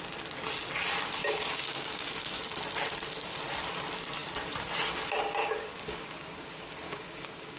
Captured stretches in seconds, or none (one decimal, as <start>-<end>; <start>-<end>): 0.0-1.2; 2.4-5.4

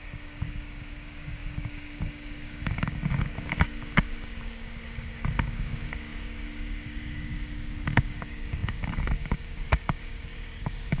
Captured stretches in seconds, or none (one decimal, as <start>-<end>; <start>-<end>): none

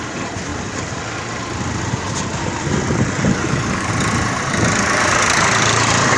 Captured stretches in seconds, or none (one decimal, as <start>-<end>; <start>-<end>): 0.0-3.3; 3.9-6.2

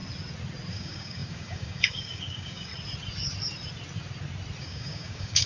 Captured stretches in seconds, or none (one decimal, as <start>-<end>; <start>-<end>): 0.0-0.7; 2.7-4.6

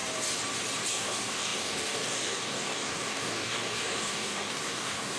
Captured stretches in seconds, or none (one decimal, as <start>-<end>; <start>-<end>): 0.0-0.9

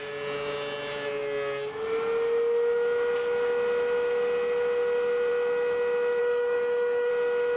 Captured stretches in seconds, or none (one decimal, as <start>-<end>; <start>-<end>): 0.0-6.2; 7.1-7.6